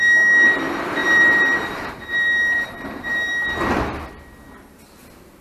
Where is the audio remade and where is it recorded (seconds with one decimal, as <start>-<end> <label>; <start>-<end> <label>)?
0.0-1.0 recorded; 1.0-3.3 remade; 3.3-5.4 recorded